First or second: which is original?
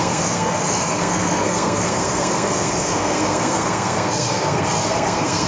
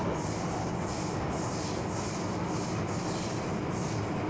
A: second